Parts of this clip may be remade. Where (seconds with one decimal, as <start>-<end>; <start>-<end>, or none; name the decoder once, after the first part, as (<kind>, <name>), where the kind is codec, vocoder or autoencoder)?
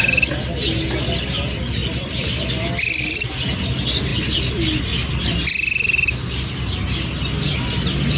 none